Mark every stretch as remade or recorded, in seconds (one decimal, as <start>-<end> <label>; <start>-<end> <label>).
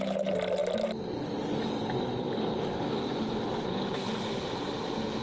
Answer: 0.0-5.2 recorded